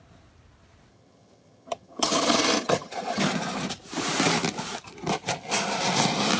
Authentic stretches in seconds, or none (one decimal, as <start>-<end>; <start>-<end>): 0.0-0.9; 3.2-6.4